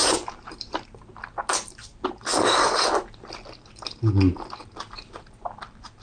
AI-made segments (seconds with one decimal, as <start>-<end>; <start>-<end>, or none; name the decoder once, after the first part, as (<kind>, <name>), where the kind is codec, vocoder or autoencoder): 0.0-1.0 (vocoder, BigVGAN v2)